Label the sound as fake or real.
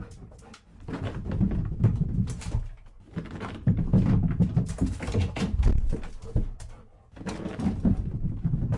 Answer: real